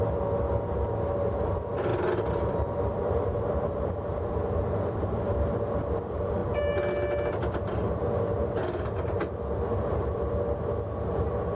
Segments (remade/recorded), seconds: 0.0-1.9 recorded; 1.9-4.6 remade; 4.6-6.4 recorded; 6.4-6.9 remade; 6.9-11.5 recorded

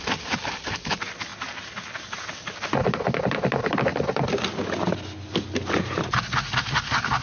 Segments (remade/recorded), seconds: 0.0-1.3 remade; 1.3-3.2 recorded; 3.2-3.9 remade; 3.9-5.8 recorded; 5.8-7.2 remade

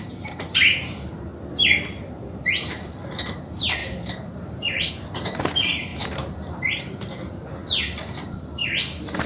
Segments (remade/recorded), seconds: 0.0-1.3 remade; 1.3-2.1 recorded; 2.1-9.3 remade

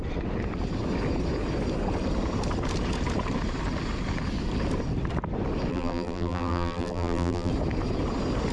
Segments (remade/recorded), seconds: 0.0-5.7 recorded; 5.7-7.5 remade; 7.5-8.5 recorded

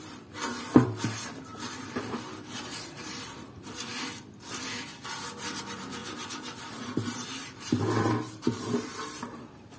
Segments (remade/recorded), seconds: 0.0-3.9 remade; 3.9-5.6 recorded; 5.6-9.8 remade

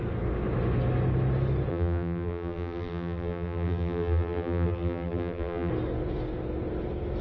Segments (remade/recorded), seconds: 0.0-1.7 recorded; 1.7-5.7 remade; 5.7-7.2 recorded

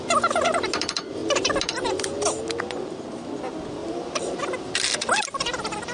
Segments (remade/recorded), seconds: 0.0-3.8 recorded; 3.8-4.4 remade; 4.4-5.9 recorded

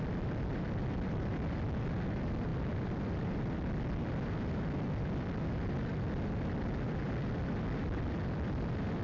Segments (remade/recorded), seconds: 0.0-9.0 remade